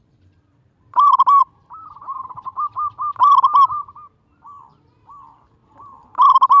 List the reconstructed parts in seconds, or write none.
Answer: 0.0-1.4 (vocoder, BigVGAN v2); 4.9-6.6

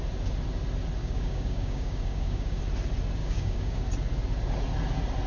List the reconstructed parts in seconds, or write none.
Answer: 1.0-2.6 (codec, DAC); 3.2-3.8

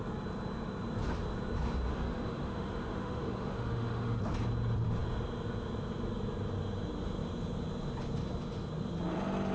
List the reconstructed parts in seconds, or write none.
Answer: 1.9-4.2 (autoencoder, DAC-VAE)